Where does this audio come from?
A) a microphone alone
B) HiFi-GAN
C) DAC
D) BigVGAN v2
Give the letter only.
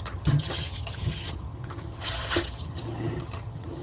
B